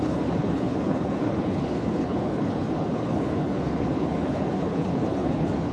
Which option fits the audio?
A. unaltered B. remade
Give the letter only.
B